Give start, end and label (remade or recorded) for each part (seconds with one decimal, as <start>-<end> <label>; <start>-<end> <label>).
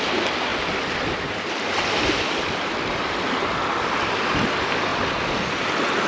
0.0-6.1 recorded